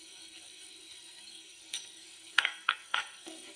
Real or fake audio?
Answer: fake